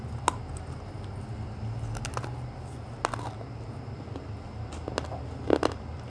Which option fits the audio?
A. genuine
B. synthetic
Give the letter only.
A